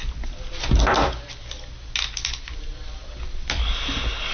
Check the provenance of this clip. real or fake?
real